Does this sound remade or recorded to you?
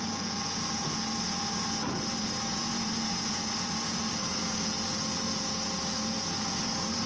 remade